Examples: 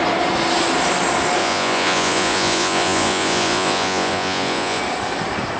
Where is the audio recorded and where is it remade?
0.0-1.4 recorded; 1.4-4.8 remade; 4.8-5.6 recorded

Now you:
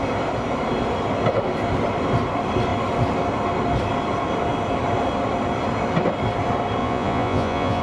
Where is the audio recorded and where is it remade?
0.0-6.8 recorded; 6.8-7.8 remade

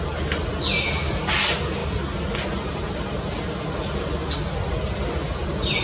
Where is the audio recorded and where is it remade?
0.0-5.8 recorded

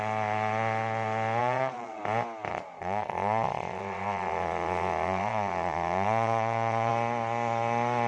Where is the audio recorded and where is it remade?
0.0-1.4 recorded; 1.4-2.0 remade; 2.0-2.5 recorded; 2.5-6.9 remade; 6.9-8.1 recorded

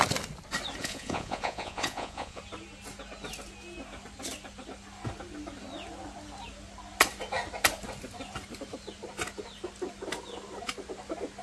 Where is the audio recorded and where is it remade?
0.0-0.8 recorded; 0.8-2.4 remade; 2.4-11.4 recorded

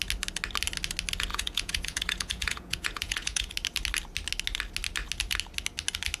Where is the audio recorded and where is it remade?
0.0-1.3 recorded; 1.3-3.5 remade; 3.5-6.2 recorded